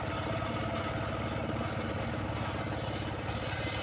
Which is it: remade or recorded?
recorded